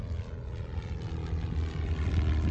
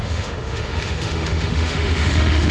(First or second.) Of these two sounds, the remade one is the second